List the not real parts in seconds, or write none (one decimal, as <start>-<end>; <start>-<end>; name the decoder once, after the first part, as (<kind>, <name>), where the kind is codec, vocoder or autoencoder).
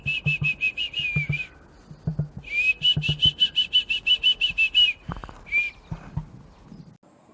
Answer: none